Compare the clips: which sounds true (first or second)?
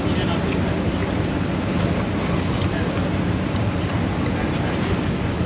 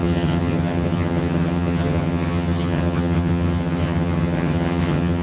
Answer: first